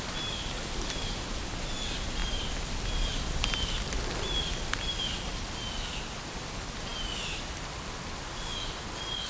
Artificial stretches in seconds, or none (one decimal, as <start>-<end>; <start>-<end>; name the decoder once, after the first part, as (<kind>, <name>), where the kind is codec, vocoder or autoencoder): none

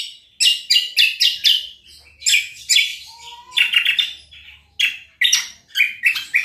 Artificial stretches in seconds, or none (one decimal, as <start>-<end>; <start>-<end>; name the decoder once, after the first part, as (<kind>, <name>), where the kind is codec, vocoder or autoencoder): none

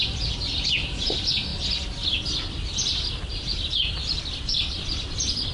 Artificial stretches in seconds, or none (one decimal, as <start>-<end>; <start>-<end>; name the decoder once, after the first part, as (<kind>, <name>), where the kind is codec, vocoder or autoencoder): 4.5-5.5 (vocoder, BigVGAN v2)

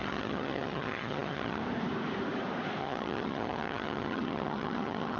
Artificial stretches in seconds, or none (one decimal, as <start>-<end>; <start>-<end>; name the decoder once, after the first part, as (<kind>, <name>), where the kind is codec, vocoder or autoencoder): 0.0-1.6 (vocoder, HiFi-GAN); 2.8-5.2

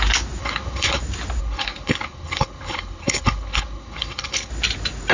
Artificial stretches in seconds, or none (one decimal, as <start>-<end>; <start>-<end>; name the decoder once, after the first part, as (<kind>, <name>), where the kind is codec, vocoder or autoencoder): 0.4-1.0 (codec, HILCodec); 1.4-4.5